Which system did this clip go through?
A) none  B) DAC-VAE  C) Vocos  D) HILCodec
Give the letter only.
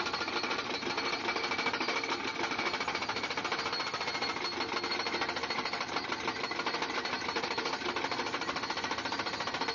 A